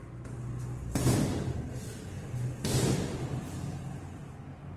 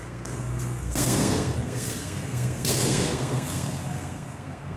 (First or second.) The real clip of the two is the first